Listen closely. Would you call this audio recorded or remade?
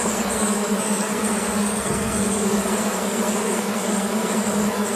remade